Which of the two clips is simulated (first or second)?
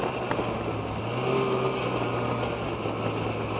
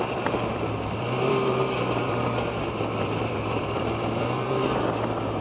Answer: second